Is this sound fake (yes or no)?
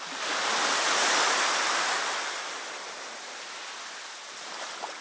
no